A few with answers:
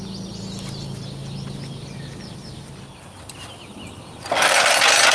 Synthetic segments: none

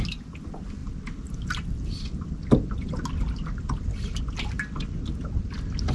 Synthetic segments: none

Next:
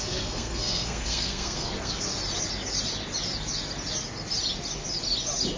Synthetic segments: 0.0-2.1

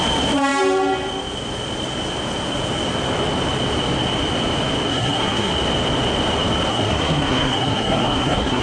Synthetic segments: 4.9-5.5; 6.7-8.6

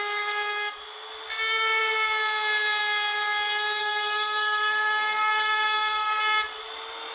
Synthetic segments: 3.8-6.2

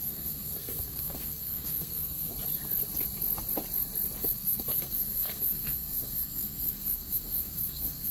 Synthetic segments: 0.0-2.3; 4.2-8.1

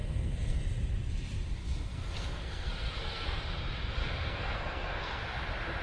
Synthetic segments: 0.0-0.6; 1.6-3.4; 4.0-5.2